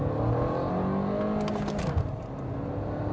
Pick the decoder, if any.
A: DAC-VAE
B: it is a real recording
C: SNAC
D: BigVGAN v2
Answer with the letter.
B